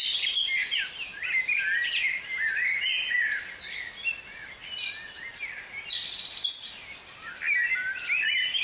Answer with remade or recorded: recorded